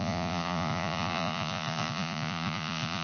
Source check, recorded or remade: remade